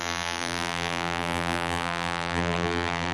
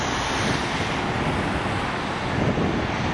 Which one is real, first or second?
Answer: second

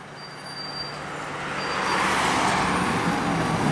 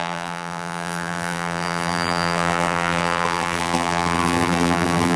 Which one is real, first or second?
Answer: first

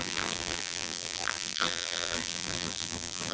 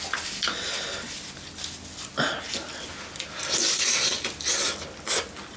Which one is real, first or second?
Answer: second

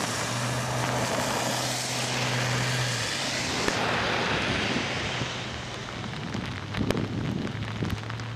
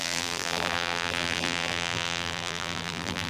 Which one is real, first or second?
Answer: first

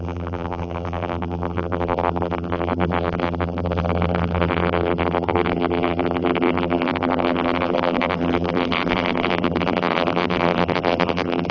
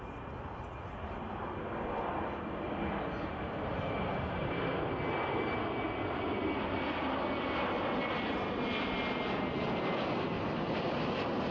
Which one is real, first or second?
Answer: second